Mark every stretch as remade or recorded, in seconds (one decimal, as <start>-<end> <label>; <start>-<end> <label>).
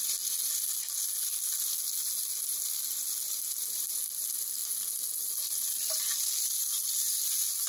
0.0-7.7 recorded